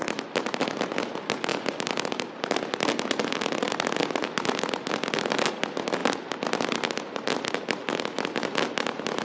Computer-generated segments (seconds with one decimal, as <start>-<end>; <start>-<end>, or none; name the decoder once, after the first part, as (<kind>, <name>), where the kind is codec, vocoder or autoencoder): none